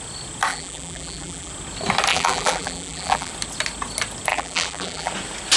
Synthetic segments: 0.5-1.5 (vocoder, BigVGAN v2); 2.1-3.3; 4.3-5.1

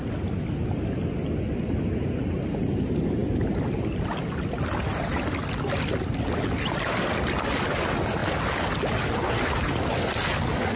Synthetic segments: none

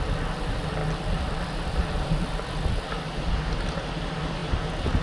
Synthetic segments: none

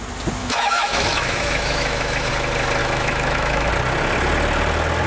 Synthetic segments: 0.4-2.3 (autoencoder, DAC-VAE); 2.8-3.7

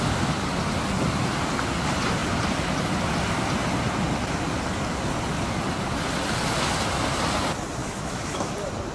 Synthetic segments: 7.8-8.5 (autoencoder, DAC-VAE)